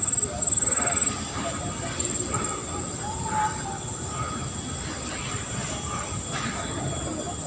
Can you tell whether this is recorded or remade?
recorded